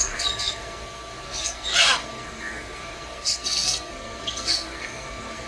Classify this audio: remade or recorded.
remade